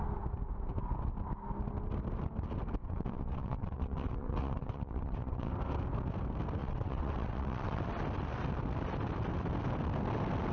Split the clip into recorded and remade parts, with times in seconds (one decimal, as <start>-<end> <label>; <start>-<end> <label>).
0.0-2.8 recorded; 2.8-5.5 remade; 5.5-6.6 recorded; 6.6-7.8 remade; 7.8-10.5 recorded